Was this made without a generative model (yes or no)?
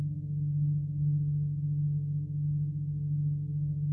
yes